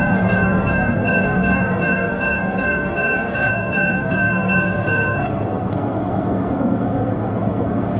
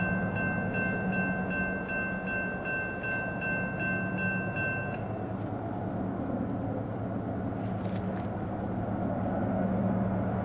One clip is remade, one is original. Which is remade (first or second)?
first